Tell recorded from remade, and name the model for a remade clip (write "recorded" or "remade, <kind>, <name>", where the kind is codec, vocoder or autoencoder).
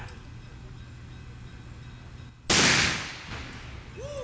recorded